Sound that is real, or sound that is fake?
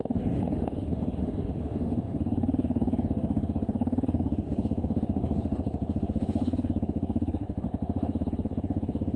fake